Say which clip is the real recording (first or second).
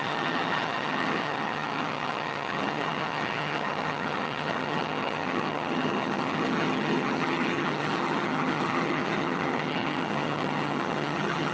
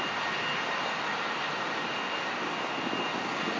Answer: second